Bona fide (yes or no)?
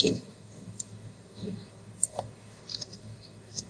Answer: no